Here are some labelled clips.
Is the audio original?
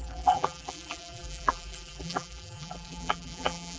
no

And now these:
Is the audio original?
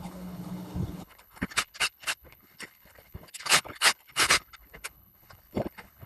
no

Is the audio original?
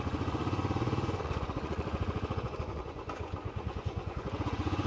no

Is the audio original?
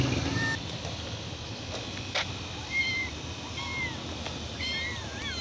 yes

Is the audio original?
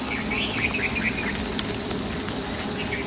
yes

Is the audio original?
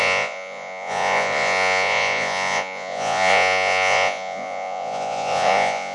no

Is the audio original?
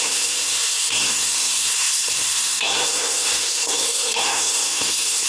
no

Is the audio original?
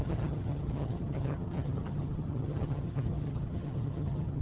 no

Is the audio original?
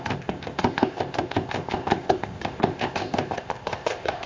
no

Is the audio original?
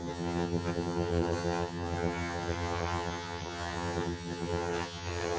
no